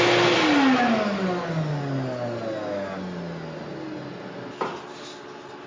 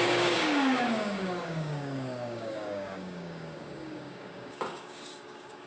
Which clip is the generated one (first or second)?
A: second